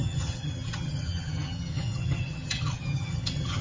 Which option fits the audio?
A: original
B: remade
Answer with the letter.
B